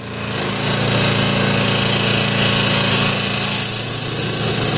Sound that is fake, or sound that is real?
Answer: real